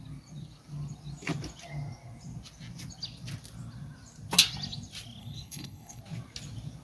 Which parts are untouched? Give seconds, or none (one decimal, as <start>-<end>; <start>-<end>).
0.0-5.2; 6.0-6.8